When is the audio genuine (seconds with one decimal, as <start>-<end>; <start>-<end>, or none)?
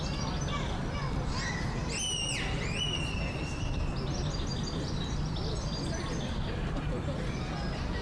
0.0-8.0